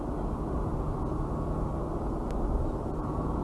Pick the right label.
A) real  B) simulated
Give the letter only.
A